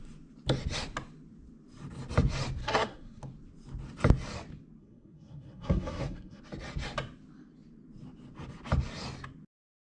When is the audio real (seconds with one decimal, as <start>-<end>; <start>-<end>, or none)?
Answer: 0.0-2.6; 3.2-4.8; 6.4-9.8